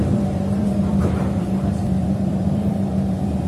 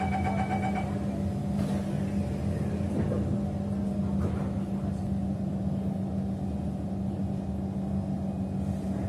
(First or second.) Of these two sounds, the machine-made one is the first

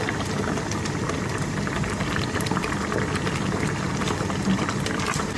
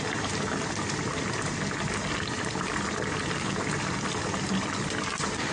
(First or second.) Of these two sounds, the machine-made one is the first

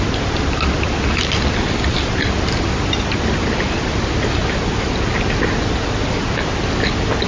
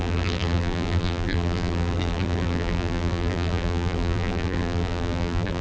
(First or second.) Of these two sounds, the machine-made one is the second